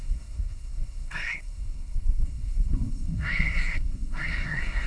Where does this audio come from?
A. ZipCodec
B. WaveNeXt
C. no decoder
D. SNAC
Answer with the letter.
D